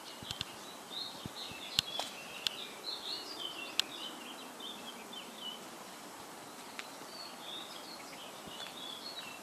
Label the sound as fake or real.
real